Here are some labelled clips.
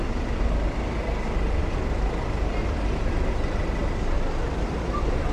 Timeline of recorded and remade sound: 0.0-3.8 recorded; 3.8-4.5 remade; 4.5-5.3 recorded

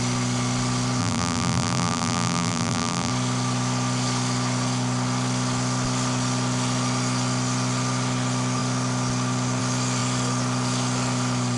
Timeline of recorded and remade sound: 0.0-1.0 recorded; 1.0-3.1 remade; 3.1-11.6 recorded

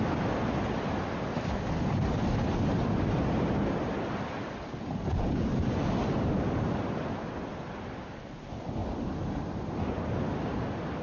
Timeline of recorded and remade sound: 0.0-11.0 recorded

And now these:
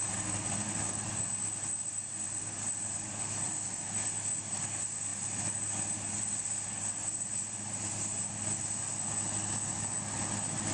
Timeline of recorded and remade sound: 0.0-10.7 recorded

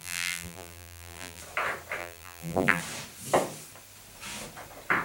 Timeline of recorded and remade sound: 0.0-1.4 remade; 1.4-2.0 recorded; 2.0-2.8 remade; 2.8-5.0 recorded

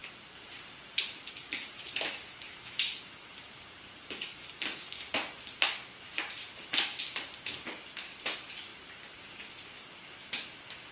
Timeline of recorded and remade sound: 0.0-1.0 remade; 1.0-1.4 recorded; 1.4-5.1 remade; 5.1-10.9 recorded

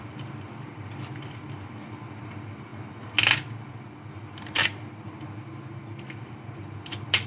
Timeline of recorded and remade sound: 0.0-2.7 remade; 2.7-3.7 recorded; 3.7-7.3 remade

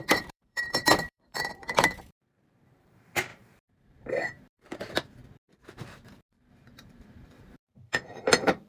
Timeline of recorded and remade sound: 0.0-8.7 remade